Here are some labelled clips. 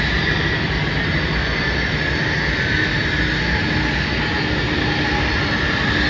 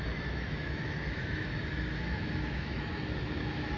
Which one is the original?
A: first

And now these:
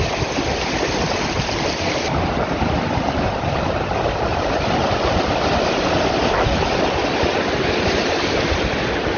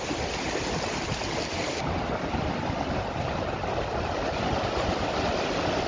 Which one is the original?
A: second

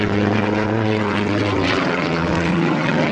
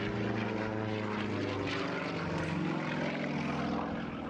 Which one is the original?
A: second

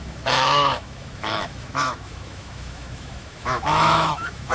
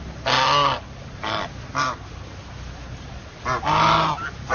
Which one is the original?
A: second